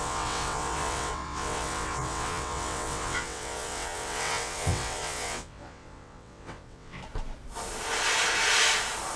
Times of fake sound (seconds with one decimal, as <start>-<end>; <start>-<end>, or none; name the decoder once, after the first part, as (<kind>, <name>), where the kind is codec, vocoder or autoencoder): 0.0-7.0 (vocoder, WaveNeXt)